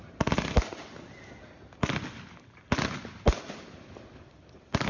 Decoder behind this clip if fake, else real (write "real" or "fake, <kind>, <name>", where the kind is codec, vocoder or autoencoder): real